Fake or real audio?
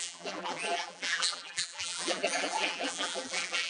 fake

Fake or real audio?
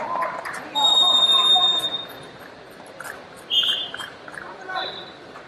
fake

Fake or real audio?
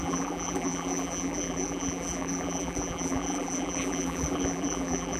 fake